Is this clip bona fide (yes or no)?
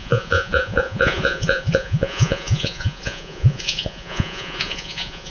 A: no